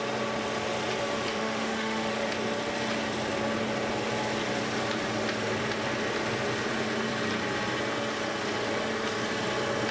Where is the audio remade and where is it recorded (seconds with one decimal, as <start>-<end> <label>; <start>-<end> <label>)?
0.0-1.3 recorded; 1.3-2.1 remade; 2.1-9.9 recorded